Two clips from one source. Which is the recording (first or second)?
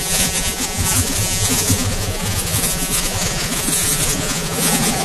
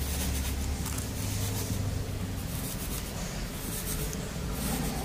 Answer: second